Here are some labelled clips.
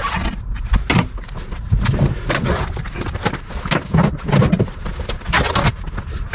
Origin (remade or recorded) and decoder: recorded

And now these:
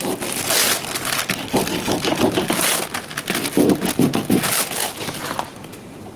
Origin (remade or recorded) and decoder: recorded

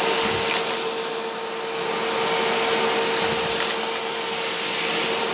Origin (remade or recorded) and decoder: recorded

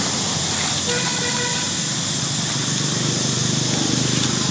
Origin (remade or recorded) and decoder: recorded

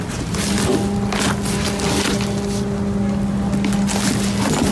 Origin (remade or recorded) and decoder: recorded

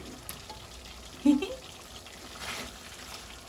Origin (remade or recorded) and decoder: recorded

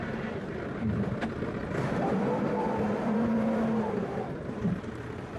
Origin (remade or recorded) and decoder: remade, vocoder, BigVGAN v2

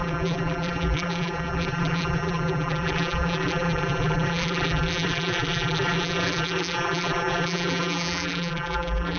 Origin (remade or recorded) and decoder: remade, vocoder, BigVGAN v2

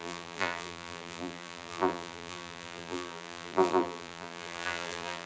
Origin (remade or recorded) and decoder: remade, vocoder, BigVGAN v2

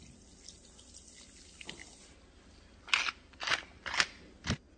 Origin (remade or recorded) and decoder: recorded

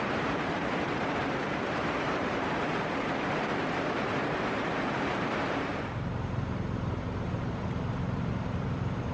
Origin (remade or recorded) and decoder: remade, vocoder, BigVGAN v2